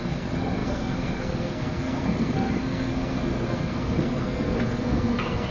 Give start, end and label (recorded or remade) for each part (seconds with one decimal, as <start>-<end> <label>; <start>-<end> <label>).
0.0-5.5 remade